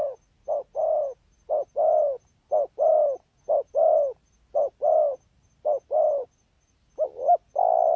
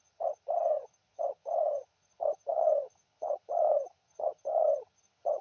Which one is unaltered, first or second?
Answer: first